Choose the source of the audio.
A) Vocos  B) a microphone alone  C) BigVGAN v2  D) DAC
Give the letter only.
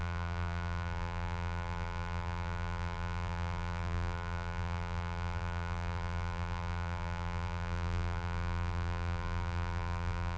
C